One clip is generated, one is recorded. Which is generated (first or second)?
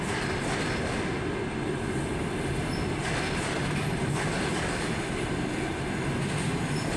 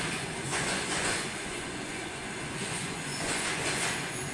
second